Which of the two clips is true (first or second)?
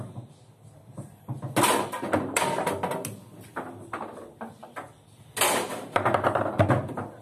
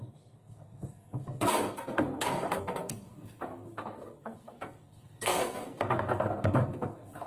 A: first